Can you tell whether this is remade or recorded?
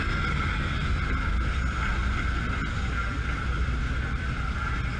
recorded